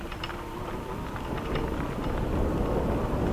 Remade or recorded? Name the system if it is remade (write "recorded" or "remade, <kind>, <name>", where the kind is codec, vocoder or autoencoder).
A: recorded